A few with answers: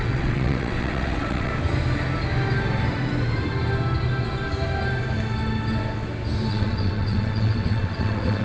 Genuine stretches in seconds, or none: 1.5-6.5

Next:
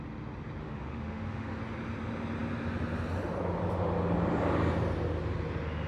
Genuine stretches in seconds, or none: 0.0-0.6; 1.6-5.9

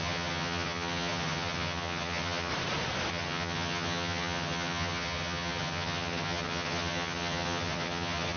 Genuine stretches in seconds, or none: 2.5-3.1

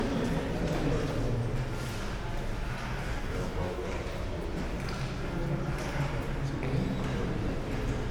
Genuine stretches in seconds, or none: 0.0-3.0; 3.9-8.1

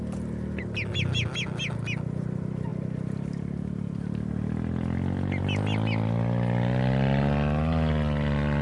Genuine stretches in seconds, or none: 0.0-8.6

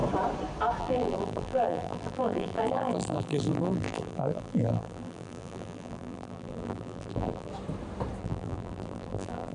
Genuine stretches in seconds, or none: 0.0-0.8; 7.5-8.2

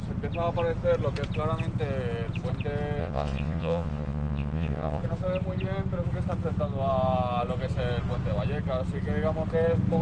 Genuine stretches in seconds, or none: 0.0-3.0; 5.0-10.0